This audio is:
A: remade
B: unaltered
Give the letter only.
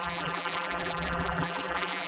A